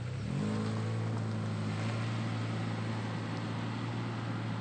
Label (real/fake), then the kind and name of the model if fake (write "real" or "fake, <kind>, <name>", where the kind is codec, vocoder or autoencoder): real